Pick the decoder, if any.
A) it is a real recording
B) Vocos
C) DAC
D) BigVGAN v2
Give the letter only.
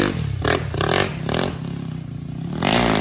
A